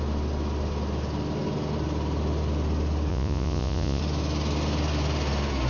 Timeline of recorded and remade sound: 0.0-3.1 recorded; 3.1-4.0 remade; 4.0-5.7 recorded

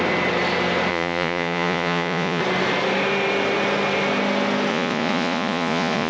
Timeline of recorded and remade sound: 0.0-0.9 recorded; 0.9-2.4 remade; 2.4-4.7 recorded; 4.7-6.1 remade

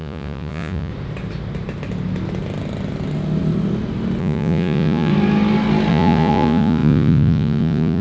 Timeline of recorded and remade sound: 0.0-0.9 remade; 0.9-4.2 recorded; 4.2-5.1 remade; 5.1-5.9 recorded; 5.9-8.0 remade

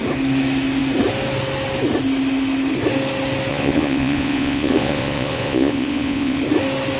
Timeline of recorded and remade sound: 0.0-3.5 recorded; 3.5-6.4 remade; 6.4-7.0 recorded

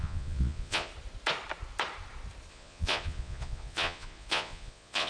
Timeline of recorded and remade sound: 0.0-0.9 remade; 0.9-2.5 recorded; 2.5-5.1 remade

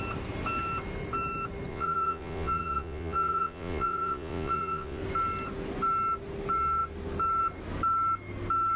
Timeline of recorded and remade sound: 0.0-1.7 recorded; 1.7-5.0 remade; 5.0-8.8 recorded

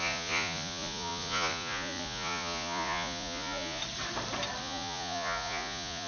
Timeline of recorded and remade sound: 0.0-3.8 remade; 3.8-4.6 recorded; 4.6-6.1 remade